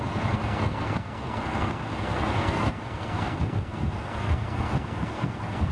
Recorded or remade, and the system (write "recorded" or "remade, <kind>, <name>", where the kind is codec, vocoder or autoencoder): remade, codec, SNAC